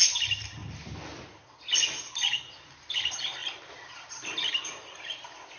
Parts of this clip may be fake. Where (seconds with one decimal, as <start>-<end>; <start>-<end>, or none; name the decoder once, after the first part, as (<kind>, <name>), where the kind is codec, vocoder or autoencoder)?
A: 2.2-2.7 (vocoder, Vocos)